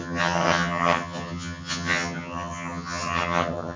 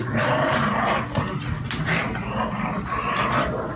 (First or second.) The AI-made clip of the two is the first